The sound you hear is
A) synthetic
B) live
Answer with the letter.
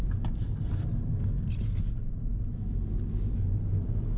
B